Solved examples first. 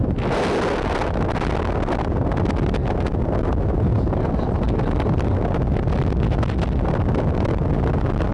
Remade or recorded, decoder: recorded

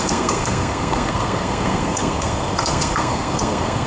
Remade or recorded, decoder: remade, codec, SNAC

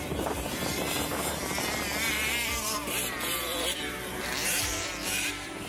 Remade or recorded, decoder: remade, vocoder, BigVGAN v2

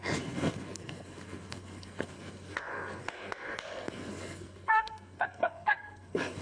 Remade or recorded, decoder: remade, codec, SNAC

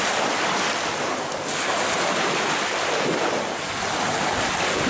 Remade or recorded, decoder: recorded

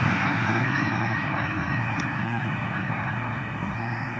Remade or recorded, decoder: remade, codec, SNAC